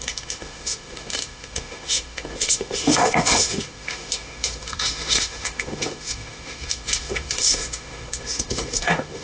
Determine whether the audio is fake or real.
fake